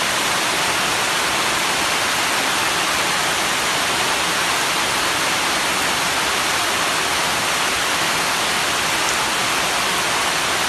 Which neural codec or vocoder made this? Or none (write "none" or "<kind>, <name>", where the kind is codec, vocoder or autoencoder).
none